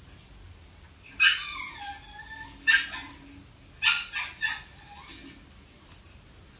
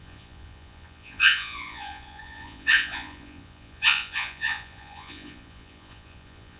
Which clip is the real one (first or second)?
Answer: first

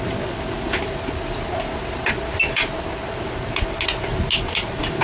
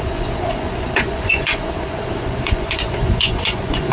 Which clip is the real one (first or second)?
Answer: first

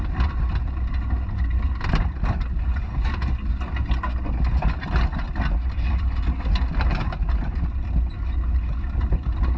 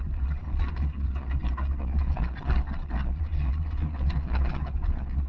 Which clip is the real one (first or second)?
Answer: first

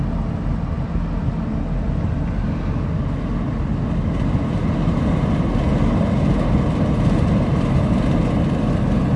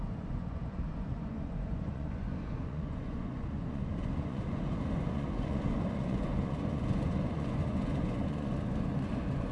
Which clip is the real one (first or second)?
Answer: first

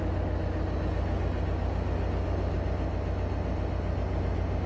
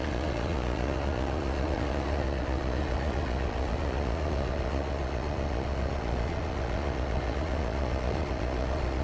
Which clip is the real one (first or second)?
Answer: first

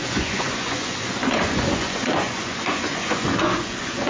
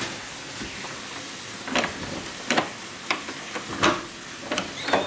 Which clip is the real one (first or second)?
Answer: second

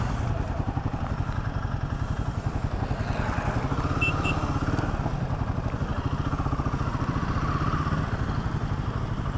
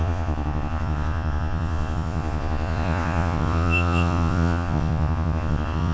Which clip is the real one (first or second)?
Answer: first